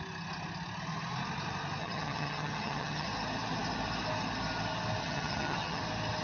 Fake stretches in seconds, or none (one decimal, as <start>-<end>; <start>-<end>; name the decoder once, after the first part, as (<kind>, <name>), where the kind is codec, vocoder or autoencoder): 1.8-3.1 (vocoder, HiFi-GAN); 5.0-5.8